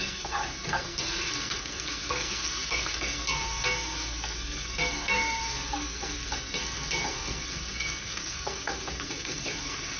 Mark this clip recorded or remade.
remade